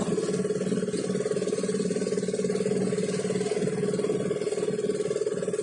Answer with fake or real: real